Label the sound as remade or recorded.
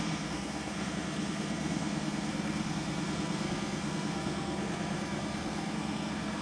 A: remade